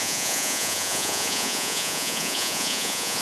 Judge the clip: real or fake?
fake